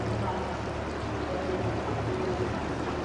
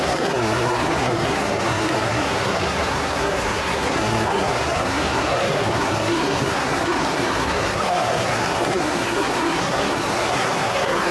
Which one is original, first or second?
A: first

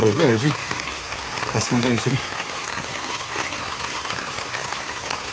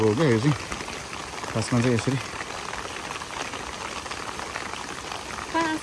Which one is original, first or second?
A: second